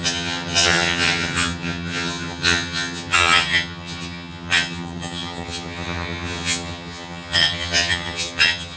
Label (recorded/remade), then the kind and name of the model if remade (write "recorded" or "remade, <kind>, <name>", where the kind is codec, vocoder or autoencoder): remade, vocoder, HiFi-GAN